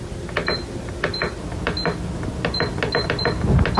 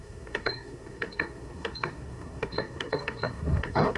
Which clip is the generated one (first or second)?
second